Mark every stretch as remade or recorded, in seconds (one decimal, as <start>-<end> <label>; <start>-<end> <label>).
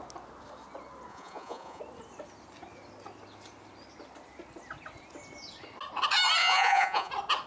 0.0-1.1 recorded; 1.1-1.8 remade; 1.8-6.4 recorded; 6.4-7.1 remade; 7.1-7.5 recorded